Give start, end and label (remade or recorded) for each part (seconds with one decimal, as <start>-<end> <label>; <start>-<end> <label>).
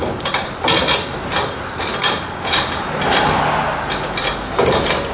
0.0-5.1 recorded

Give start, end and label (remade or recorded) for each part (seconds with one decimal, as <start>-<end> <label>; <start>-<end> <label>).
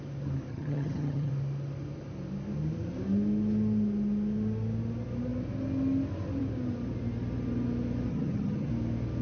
0.0-0.5 recorded; 0.5-1.3 remade; 1.3-8.1 recorded; 8.1-8.7 remade; 8.7-9.2 recorded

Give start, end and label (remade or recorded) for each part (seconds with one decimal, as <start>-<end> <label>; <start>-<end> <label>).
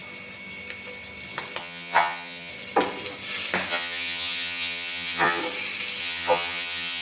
0.0-1.6 recorded; 1.6-2.5 remade; 2.5-3.7 recorded; 3.7-5.4 remade; 5.4-6.0 recorded; 6.0-7.0 remade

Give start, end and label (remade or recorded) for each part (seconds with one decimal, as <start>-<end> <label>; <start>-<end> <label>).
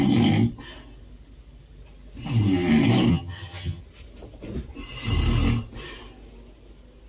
0.0-3.1 recorded; 3.1-3.8 remade; 3.8-7.1 recorded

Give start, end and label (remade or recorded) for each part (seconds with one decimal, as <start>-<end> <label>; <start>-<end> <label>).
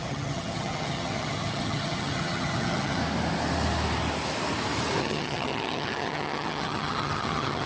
0.0-3.0 remade; 3.0-5.0 recorded; 5.0-7.7 remade